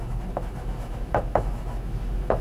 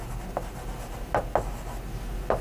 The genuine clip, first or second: second